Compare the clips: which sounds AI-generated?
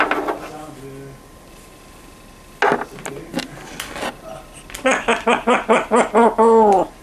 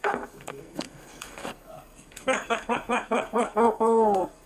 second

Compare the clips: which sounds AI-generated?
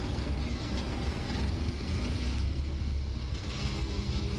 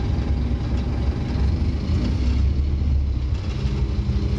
first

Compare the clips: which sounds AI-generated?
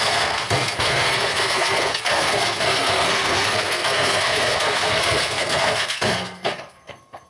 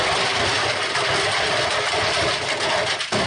first